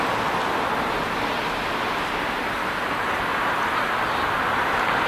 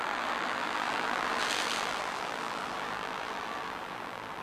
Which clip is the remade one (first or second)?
second